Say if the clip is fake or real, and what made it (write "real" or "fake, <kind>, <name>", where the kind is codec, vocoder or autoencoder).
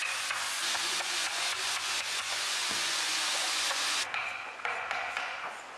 fake, vocoder, Vocos